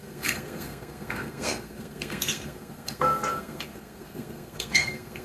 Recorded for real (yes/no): no